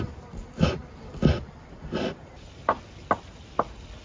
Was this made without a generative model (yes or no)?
yes